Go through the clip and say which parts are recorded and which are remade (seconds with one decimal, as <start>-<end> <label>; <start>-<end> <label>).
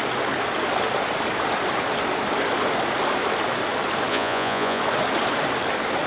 0.0-4.1 recorded; 4.1-4.8 remade; 4.8-6.1 recorded